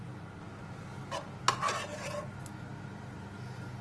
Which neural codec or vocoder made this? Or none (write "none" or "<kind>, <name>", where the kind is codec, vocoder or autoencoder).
none